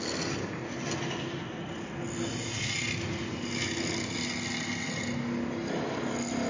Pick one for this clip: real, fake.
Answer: real